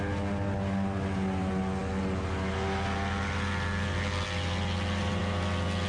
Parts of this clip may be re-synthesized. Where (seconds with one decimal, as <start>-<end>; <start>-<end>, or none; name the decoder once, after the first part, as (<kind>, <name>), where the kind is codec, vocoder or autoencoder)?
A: none